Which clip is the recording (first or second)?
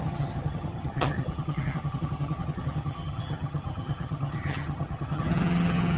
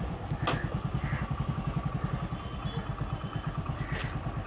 second